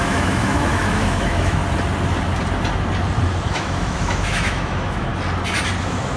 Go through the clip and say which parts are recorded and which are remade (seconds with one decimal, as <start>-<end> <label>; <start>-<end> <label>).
0.0-1.6 remade; 1.6-3.5 recorded; 3.5-5.1 remade; 5.1-5.8 recorded; 5.8-6.2 remade